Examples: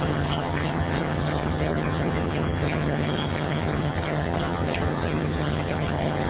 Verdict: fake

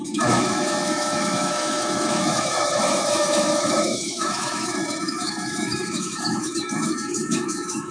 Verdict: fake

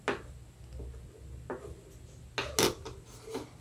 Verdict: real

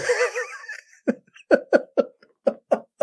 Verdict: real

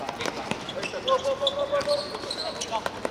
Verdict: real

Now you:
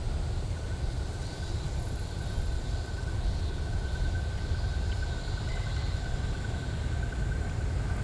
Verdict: real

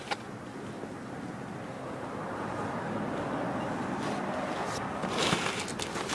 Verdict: real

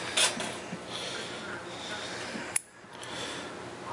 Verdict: real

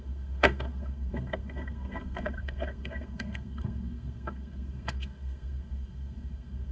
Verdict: fake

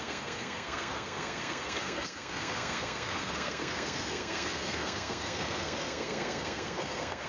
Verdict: fake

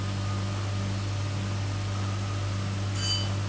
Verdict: real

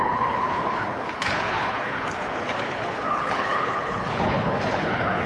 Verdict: fake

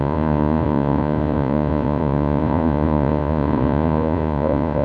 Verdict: fake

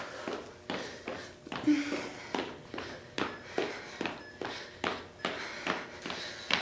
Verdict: real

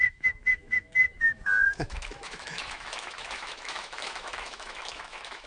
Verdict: fake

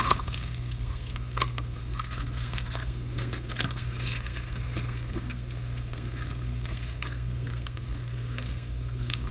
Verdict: fake